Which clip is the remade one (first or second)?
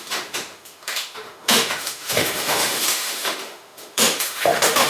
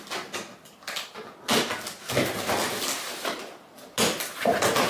first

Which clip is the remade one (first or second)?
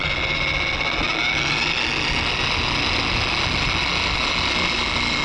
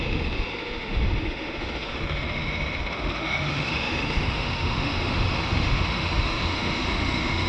second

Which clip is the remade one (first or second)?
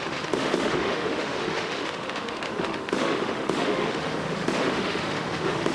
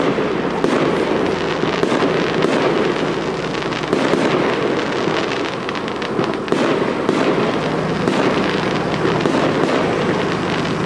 first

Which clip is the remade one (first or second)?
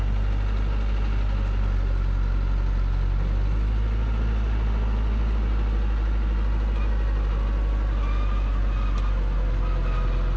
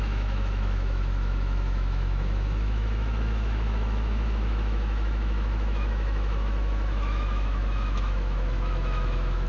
second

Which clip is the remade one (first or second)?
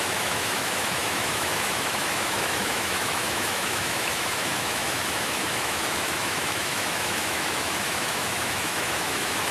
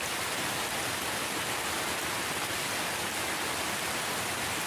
first